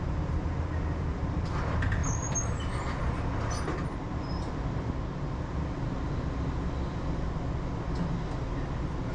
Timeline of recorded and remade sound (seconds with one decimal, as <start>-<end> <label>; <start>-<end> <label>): 0.0-9.1 recorded